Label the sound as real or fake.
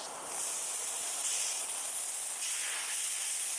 real